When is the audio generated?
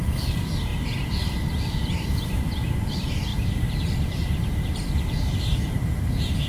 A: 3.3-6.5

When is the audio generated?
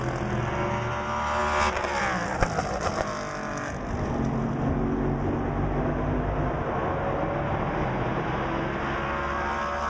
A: none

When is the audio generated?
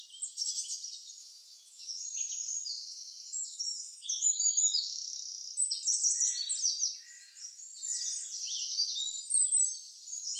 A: 1.2-2.2; 2.7-5.1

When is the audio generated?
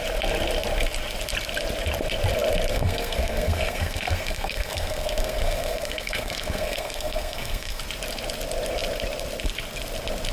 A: 2.7-7.8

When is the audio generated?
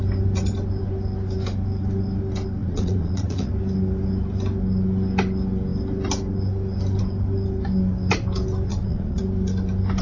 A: 2.6-3.5; 8.7-9.2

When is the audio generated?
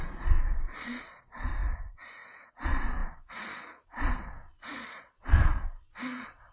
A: 0.0-1.5; 2.5-6.5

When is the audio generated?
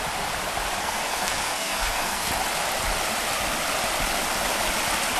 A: 0.8-2.3